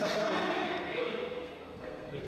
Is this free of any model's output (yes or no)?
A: no